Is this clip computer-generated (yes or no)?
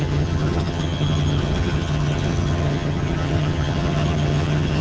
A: yes